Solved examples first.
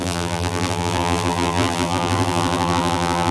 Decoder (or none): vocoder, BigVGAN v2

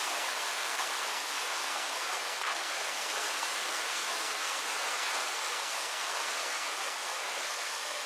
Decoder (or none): codec, SNAC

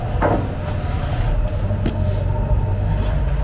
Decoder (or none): none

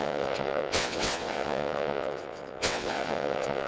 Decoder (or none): vocoder, WaveNeXt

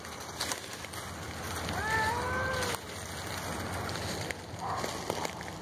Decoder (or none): none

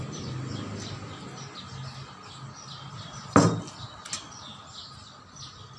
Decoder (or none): none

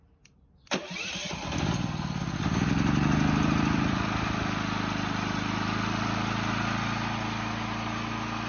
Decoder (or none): none